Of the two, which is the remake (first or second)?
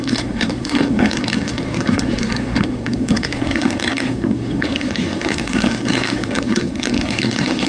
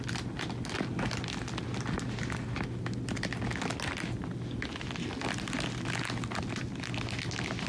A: first